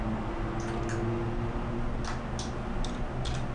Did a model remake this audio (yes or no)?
no